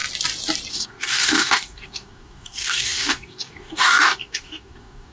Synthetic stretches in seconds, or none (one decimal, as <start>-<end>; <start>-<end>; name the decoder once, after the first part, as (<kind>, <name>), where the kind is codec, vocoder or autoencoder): 0.7-5.1 (codec, DAC)